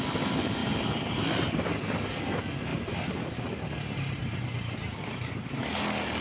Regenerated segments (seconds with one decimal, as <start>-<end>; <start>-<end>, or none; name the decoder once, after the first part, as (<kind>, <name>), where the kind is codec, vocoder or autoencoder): 0.6-1.6 (vocoder, BigVGAN v2); 2.7-3.4; 4.2-5.6